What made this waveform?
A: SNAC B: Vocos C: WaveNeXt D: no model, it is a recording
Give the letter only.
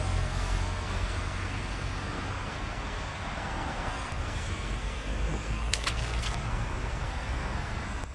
A